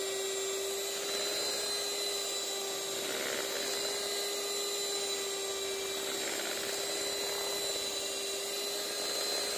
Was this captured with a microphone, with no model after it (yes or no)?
yes